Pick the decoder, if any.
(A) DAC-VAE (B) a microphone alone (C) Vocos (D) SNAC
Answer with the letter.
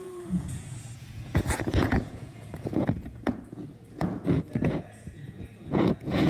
C